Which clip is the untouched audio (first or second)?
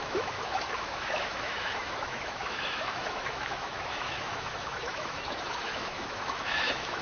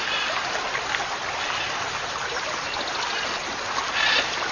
second